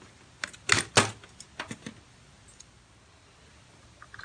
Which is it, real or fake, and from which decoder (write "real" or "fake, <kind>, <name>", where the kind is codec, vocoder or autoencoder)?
real